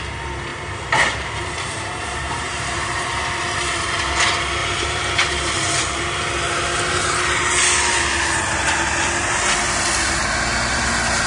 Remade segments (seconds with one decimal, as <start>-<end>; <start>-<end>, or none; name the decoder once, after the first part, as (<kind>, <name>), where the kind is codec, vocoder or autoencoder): 0.5-3.4 (vocoder, BigVGAN v2); 4.6-5.8